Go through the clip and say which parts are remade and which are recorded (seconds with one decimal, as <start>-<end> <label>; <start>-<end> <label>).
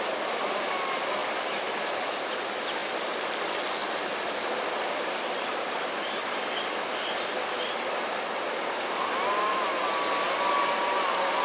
0.0-1.2 recorded; 1.2-1.9 remade; 1.9-2.8 recorded; 2.8-3.4 remade; 3.4-3.8 recorded; 3.8-8.4 remade; 8.4-11.4 recorded